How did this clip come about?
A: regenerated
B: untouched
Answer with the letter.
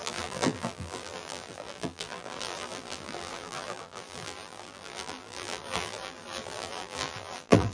A